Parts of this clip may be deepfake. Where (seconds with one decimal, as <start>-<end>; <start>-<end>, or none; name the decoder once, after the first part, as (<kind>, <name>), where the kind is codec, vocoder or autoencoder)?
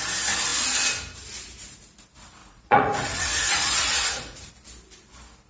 2.4-4.5 (vocoder, Vocos)